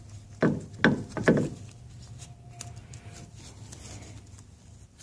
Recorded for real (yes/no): yes